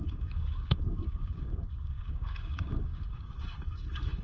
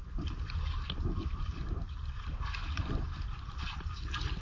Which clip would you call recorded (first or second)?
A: second